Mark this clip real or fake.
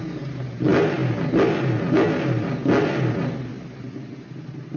real